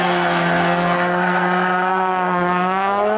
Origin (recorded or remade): remade